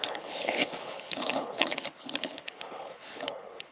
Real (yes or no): no